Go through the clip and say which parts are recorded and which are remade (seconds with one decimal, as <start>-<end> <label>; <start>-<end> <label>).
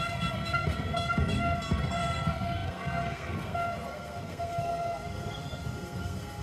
0.0-6.4 remade